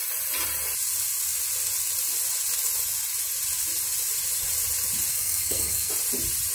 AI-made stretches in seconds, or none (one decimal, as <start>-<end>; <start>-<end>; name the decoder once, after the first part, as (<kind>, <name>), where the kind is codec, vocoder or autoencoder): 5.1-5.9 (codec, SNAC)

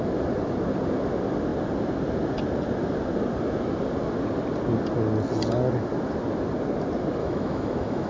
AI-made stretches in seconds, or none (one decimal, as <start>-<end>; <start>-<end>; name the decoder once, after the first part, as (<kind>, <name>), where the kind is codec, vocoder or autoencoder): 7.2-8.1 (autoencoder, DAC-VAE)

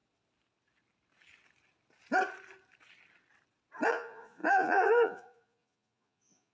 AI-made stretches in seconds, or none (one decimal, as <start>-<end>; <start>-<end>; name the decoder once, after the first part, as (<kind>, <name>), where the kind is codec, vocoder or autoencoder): 3.9-6.5 (vocoder, Vocos)

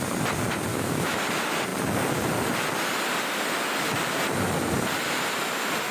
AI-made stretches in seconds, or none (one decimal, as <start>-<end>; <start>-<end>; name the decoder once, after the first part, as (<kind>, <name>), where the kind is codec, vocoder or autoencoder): 0.7-1.2 (autoencoder, DAC-VAE)

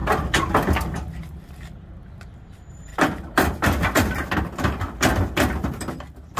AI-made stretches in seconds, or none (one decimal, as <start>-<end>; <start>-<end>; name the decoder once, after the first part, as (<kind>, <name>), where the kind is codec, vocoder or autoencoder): none

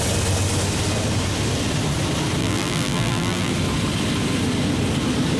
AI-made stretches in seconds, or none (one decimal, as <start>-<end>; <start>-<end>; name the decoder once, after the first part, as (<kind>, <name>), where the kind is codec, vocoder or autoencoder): 2.4-3.5 (vocoder, BigVGAN v2)